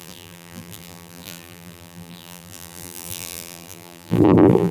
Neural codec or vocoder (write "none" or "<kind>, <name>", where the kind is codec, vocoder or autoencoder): vocoder, BigVGAN v2